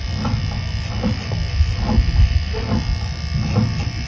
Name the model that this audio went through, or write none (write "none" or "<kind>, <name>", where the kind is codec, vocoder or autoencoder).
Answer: none